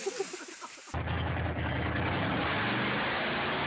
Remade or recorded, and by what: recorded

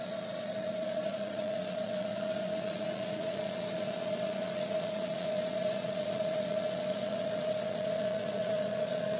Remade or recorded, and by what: remade, vocoder, Vocos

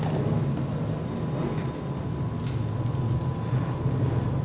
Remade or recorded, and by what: recorded